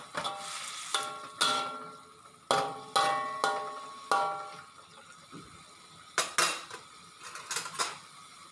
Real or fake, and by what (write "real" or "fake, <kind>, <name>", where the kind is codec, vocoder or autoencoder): real